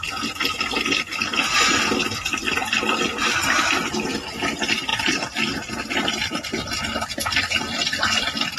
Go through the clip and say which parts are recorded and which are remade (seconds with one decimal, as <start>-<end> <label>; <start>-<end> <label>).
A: 0.0-8.6 recorded

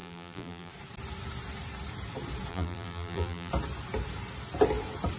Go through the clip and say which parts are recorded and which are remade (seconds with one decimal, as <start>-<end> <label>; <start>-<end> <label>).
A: 0.0-0.7 remade; 0.7-2.5 recorded; 2.5-3.5 remade; 3.5-5.2 recorded